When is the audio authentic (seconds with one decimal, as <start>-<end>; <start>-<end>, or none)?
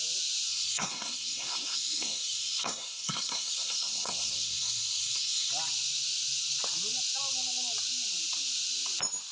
0.0-0.5; 5.5-9.3